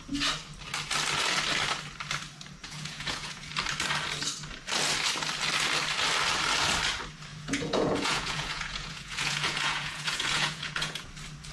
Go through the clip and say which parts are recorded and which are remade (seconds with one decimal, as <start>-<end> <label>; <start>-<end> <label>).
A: 0.0-2.6 recorded; 2.6-3.5 remade; 3.5-7.3 recorded; 7.3-11.1 remade; 11.1-11.5 recorded